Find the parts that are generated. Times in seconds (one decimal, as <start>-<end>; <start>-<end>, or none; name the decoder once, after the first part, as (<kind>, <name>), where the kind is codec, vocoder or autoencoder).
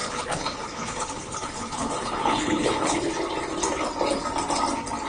0.0-3.1 (codec, HILCodec)